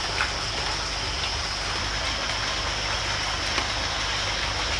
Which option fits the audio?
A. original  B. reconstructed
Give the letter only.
A